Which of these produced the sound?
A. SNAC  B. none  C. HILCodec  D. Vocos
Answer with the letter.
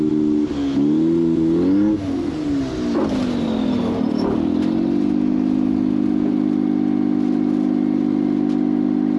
B